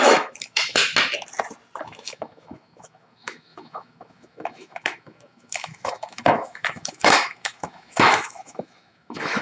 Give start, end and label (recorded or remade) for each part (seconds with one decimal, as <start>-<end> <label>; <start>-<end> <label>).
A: 0.0-0.8 remade; 0.8-1.8 recorded; 1.8-9.4 remade

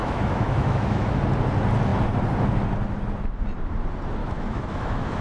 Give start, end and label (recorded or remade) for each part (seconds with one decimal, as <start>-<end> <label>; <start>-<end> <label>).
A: 0.0-1.2 remade; 1.2-4.2 recorded; 4.2-5.2 remade

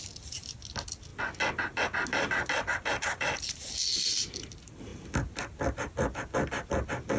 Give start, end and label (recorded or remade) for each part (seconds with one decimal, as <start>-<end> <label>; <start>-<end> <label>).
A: 0.0-7.2 recorded